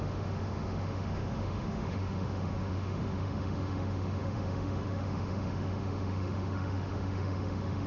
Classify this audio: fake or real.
fake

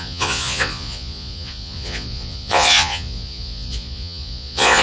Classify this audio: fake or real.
fake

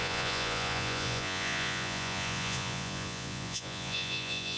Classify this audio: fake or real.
fake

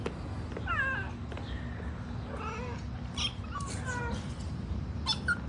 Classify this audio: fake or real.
real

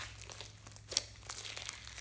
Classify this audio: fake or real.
real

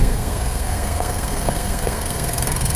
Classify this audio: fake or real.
fake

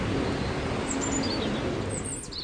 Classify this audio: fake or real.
real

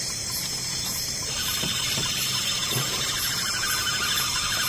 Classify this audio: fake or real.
fake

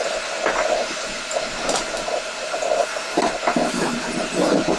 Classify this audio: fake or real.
real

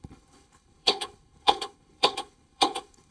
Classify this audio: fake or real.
fake